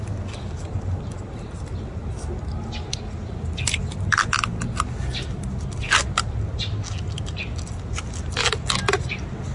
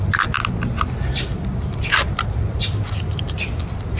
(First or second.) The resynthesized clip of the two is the second